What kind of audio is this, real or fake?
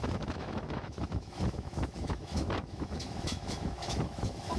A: fake